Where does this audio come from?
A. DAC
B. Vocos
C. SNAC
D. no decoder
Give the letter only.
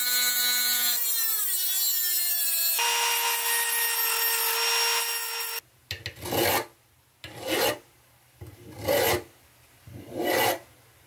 D